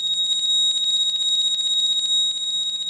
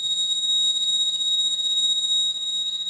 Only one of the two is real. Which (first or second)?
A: first